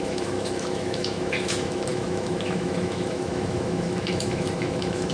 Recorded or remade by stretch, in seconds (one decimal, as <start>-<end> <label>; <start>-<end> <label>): 0.0-5.1 remade